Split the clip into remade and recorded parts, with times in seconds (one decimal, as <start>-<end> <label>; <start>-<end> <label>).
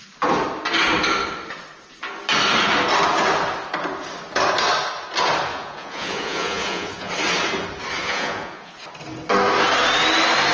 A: 0.0-5.5 recorded; 5.5-7.1 remade; 7.1-8.0 recorded; 8.0-8.8 remade; 8.8-10.5 recorded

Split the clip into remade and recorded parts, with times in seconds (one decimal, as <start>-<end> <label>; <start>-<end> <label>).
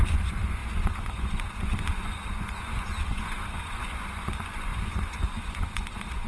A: 0.0-6.3 remade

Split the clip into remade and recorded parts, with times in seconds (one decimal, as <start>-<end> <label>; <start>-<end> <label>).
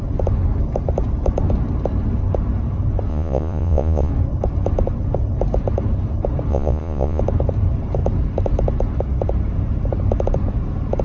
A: 0.0-3.1 recorded; 3.1-4.1 remade; 4.1-6.5 recorded; 6.5-7.2 remade; 7.2-11.0 recorded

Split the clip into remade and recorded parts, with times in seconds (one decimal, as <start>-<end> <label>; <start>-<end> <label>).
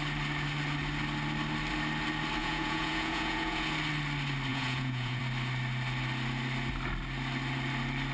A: 0.0-2.4 recorded; 2.4-3.7 remade; 3.7-4.5 recorded; 4.5-5.2 remade; 5.2-8.1 recorded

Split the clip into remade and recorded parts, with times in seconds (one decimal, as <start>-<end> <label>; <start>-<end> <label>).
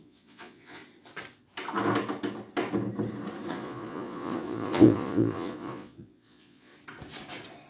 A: 0.0-0.8 remade; 0.8-3.5 recorded; 3.5-6.7 remade; 6.7-7.7 recorded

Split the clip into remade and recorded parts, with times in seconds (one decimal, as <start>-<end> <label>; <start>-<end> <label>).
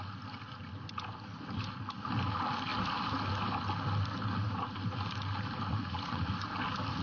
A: 0.0-5.7 recorded; 5.7-6.3 remade; 6.3-7.0 recorded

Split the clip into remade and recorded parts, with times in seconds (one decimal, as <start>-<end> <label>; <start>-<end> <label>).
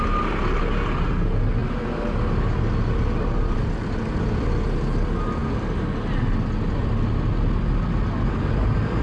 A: 0.0-9.0 recorded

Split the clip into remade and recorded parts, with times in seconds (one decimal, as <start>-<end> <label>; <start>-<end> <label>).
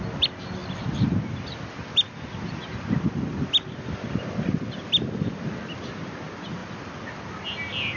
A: 0.0-8.0 recorded